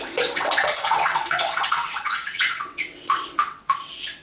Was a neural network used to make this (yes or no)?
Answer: yes